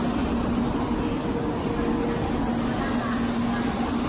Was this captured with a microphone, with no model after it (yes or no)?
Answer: yes